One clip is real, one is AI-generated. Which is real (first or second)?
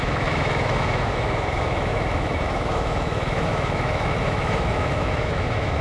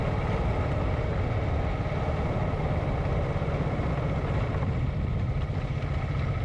second